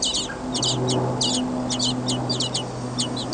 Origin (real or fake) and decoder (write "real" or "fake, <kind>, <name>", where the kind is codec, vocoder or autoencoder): real